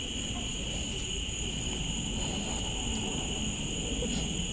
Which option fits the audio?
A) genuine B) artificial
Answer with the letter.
A